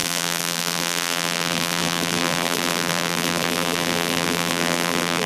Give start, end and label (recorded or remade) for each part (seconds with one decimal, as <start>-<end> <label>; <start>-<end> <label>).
0.0-5.3 remade